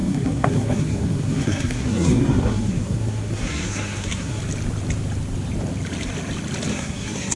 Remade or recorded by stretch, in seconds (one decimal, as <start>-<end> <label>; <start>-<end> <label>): 0.0-4.4 remade; 4.4-6.7 recorded; 6.7-7.4 remade